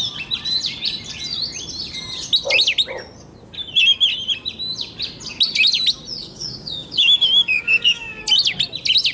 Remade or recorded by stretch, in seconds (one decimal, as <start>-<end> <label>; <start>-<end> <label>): 0.0-6.2 recorded; 6.2-8.2 remade; 8.2-9.1 recorded